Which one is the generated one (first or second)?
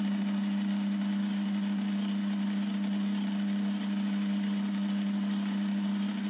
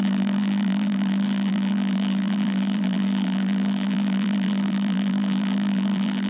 second